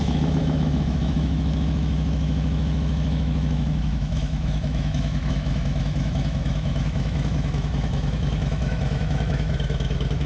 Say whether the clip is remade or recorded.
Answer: remade